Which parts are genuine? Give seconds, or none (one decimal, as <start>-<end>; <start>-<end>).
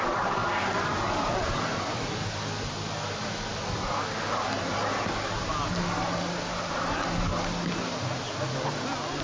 0.0-9.2